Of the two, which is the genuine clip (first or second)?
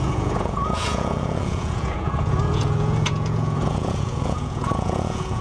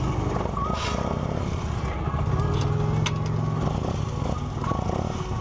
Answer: second